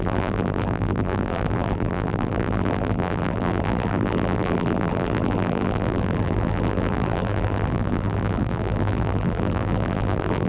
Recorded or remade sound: remade